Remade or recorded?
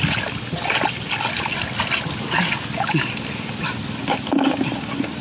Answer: recorded